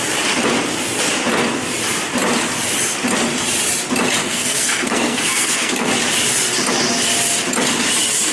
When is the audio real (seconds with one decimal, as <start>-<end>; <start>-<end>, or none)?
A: 0.0-4.2; 5.9-8.3